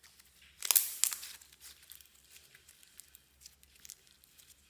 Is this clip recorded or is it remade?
recorded